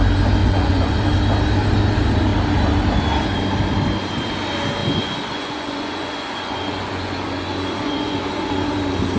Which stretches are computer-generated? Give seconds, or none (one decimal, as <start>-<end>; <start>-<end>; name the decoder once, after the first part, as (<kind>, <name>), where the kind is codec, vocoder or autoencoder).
0.4-1.0 (vocoder, Vocos); 4.8-8.5

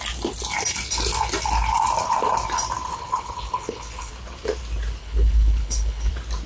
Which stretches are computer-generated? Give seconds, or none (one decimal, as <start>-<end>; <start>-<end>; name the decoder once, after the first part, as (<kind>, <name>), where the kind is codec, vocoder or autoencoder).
2.9-4.1 (codec, HILCodec); 5.0-6.1

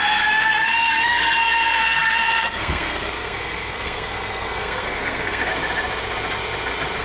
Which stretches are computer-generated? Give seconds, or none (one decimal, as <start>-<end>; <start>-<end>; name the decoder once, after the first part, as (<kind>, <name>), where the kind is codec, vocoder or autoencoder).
0.0-5.5 (codec, SNAC)

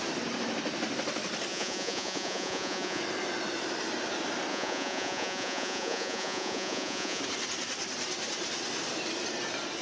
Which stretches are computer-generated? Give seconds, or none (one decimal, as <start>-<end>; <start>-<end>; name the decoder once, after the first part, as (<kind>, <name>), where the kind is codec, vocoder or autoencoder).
1.5-3.0 (vocoder, Vocos); 4.5-7.2

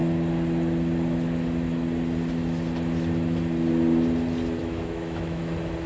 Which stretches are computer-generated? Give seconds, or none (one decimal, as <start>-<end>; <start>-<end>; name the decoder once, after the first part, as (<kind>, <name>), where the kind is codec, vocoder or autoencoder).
4.6-5.4 (autoencoder, DAC-VAE)

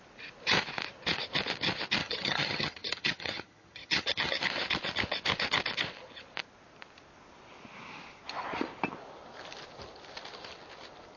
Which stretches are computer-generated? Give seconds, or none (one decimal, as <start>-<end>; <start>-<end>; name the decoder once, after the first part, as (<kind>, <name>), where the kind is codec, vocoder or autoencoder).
2.0-4.4 (vocoder, HiFi-GAN)

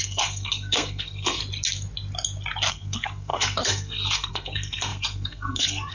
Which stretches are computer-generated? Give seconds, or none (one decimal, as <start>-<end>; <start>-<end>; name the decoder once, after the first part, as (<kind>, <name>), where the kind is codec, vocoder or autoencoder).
0.0-1.4 (codec, SNAC); 2.7-5.9

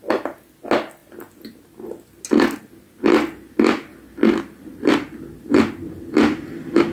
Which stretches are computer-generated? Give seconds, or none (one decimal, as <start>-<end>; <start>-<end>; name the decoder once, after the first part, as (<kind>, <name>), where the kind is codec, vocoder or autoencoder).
4.2-4.9 (vocoder, BigVGAN v2)